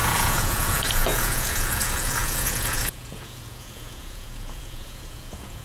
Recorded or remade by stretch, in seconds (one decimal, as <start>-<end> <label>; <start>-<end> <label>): 0.0-5.6 remade

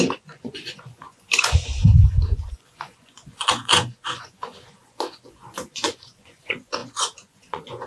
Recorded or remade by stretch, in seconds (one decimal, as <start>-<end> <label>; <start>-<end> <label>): 0.0-7.9 remade

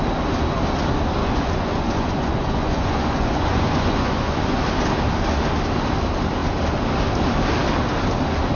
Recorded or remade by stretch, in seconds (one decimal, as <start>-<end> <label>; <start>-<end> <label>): 0.0-1.2 recorded; 1.2-4.6 remade; 4.6-8.5 recorded

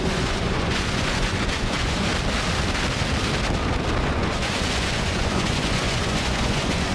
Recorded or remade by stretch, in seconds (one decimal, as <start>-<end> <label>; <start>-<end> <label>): 0.0-2.1 remade; 2.1-4.0 recorded; 4.0-6.9 remade

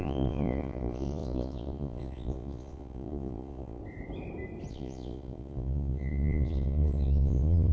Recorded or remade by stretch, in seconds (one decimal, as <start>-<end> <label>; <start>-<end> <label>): 0.0-3.8 remade; 3.8-4.7 recorded; 4.7-7.7 remade

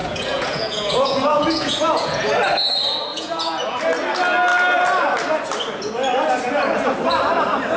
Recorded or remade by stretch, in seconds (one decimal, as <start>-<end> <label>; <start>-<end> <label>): 0.0-2.3 remade; 2.3-3.1 recorded; 3.1-3.8 remade; 3.8-7.8 recorded